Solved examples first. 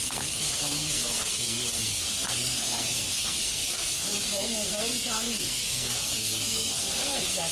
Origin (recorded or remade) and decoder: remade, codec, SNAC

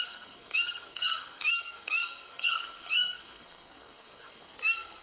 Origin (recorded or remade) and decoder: remade, codec, SNAC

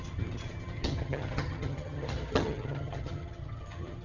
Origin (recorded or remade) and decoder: remade, vocoder, HiFi-GAN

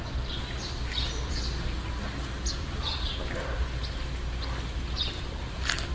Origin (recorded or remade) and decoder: recorded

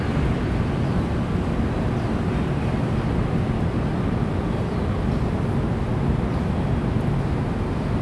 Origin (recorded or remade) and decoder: recorded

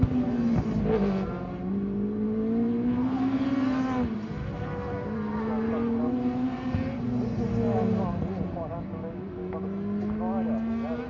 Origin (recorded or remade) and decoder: recorded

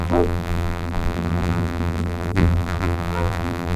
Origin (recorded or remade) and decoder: remade, vocoder, BigVGAN v2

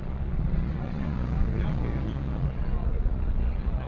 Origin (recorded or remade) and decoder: remade, vocoder, Vocos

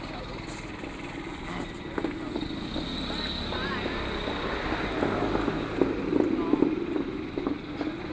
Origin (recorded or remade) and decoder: recorded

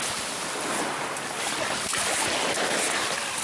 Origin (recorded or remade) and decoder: recorded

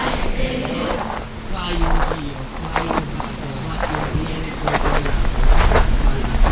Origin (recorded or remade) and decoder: recorded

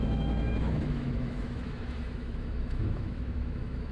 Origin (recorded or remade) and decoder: remade, autoencoder, DAC-VAE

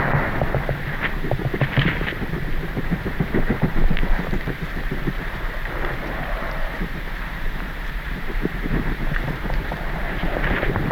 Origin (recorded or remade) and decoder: remade, vocoder, BigVGAN v2